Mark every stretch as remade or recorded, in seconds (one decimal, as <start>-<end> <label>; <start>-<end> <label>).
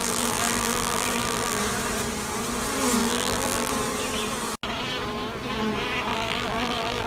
0.0-1.6 remade; 1.6-3.0 recorded; 3.0-3.7 remade; 3.7-6.1 recorded; 6.1-7.1 remade